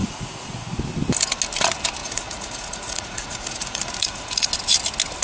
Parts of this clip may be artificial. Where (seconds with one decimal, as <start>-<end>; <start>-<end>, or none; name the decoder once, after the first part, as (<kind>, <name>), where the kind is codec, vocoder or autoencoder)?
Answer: 0.0-0.8 (vocoder, Vocos); 2.0-4.5